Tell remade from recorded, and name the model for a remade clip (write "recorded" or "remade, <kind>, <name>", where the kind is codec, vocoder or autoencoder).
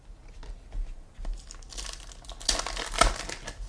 recorded